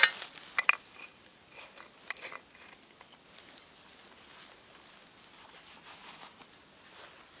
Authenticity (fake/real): real